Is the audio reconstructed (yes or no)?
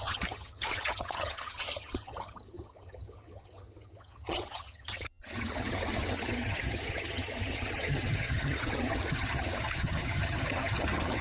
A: yes